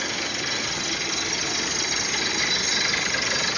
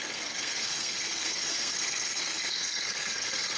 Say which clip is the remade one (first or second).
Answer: second